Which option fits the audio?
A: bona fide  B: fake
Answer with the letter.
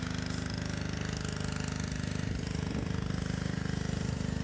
A